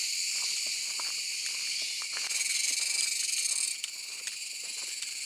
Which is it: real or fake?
real